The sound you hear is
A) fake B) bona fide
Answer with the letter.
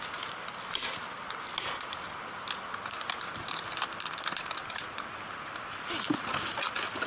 B